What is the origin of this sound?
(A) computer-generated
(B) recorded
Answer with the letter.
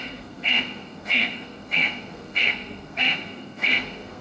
A